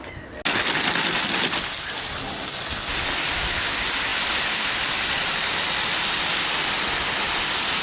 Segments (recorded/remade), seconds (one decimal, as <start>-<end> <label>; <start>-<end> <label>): 0.0-7.8 recorded